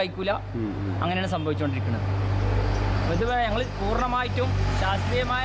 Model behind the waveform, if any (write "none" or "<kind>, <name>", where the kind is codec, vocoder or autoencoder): none